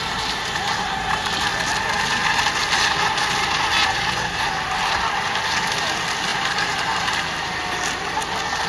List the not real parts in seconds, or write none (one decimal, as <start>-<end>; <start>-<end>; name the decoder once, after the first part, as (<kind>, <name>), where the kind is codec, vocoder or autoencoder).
6.3-7.1 (vocoder, BigVGAN v2)